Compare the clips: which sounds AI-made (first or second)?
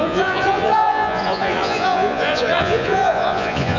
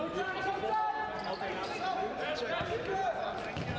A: first